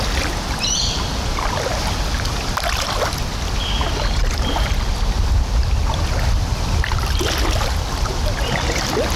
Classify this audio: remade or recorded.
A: recorded